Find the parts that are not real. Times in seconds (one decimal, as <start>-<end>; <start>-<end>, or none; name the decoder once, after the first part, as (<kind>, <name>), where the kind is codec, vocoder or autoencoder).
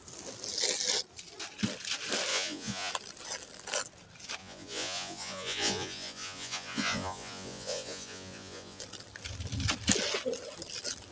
2.3-2.9 (vocoder, Vocos); 4.4-8.8